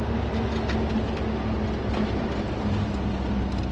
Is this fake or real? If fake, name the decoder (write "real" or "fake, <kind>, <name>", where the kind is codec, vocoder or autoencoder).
real